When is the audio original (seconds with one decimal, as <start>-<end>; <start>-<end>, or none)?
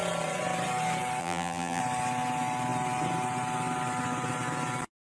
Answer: 0.0-1.2; 1.8-5.0